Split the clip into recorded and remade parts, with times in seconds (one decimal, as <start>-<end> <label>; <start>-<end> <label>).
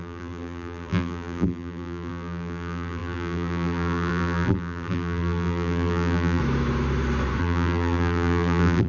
0.0-6.4 remade; 6.4-7.4 recorded; 7.4-8.9 remade